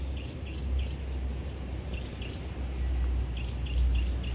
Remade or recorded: recorded